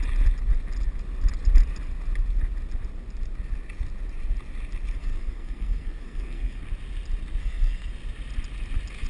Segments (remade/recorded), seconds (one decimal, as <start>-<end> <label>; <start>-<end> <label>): 0.0-5.0 recorded; 5.0-6.6 remade; 6.6-7.4 recorded; 7.4-7.9 remade; 7.9-9.1 recorded